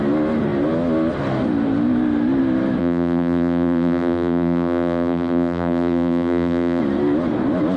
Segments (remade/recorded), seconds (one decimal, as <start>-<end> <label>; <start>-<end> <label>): 0.0-2.8 recorded; 2.8-6.8 remade; 6.8-7.8 recorded